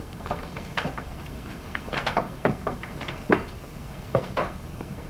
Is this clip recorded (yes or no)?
no